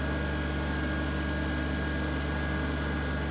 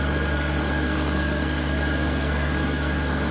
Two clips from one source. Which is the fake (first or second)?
second